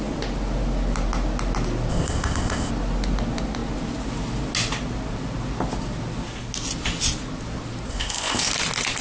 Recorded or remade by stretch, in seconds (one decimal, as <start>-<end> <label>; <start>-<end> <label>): 0.0-1.9 recorded; 1.9-2.7 remade; 2.7-7.9 recorded; 7.9-8.5 remade; 8.5-9.0 recorded